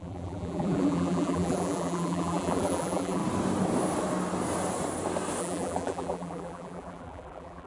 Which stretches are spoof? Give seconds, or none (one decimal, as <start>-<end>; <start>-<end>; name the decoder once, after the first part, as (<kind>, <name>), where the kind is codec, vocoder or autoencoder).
0.0-3.2 (vocoder, BigVGAN v2); 5.4-7.7